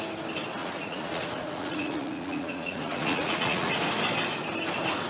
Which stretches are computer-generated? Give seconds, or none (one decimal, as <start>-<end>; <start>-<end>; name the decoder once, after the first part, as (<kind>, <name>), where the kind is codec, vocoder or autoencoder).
0.6-3.7 (vocoder, Vocos)